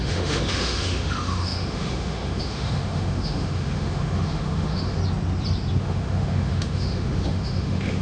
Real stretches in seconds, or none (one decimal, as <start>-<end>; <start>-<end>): 5.0-5.8